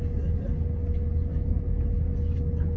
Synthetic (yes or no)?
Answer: no